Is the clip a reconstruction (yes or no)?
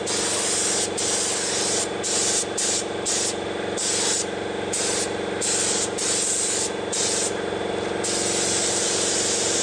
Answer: no